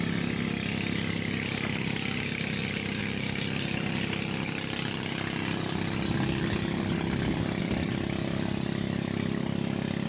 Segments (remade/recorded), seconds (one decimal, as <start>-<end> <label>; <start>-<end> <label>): 0.0-10.1 recorded